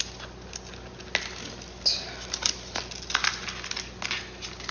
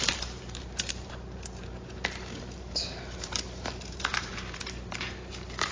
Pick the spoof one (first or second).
second